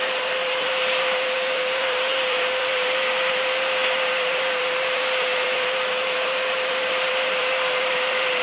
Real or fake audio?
fake